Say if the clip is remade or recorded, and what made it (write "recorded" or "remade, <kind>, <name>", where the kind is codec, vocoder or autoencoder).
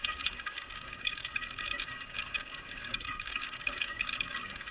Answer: remade, codec, DAC